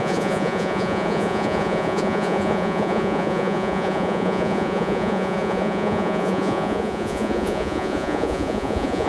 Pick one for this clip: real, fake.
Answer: fake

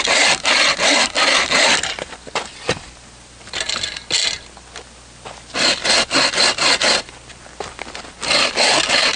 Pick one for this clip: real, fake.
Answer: real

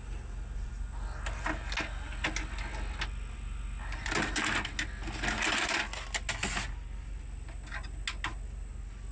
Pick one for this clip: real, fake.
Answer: real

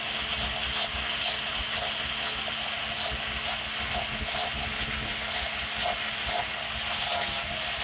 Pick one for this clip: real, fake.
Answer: real